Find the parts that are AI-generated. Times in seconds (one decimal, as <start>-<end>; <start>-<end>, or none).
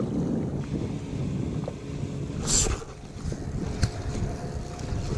none